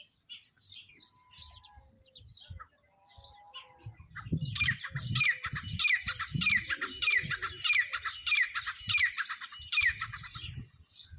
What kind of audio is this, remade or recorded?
recorded